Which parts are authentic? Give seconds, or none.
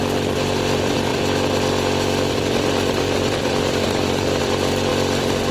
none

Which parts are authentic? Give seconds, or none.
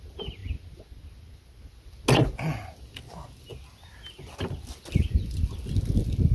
0.0-6.3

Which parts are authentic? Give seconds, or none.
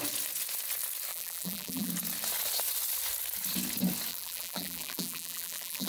0.0-1.1; 1.9-4.1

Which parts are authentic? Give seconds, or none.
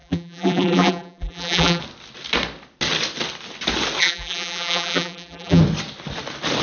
1.8-4.0; 5.6-6.6